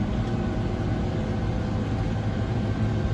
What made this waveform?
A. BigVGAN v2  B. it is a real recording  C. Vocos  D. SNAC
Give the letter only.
B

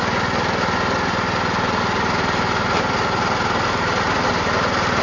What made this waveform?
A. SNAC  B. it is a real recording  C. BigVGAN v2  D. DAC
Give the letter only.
B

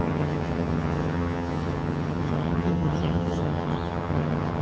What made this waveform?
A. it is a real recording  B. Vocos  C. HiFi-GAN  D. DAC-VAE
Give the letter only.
C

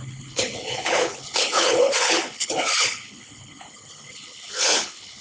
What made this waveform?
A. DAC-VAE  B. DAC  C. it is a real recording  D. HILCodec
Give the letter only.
D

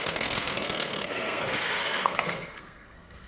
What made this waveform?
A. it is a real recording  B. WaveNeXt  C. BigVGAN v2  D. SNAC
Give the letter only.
D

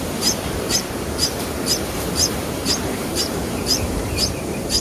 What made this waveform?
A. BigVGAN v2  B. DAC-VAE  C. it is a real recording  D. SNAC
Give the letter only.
A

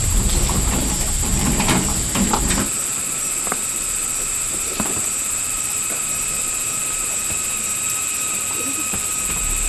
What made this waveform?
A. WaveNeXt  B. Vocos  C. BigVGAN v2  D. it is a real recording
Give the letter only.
C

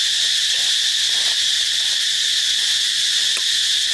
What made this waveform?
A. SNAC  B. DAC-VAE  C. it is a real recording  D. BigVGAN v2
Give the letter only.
C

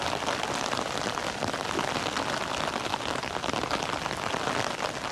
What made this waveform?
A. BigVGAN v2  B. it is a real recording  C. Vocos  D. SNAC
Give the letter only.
B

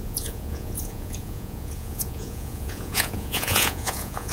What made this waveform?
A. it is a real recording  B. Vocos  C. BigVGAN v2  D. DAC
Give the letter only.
B